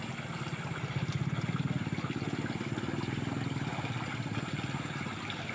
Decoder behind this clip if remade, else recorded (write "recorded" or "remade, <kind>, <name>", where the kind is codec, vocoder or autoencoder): recorded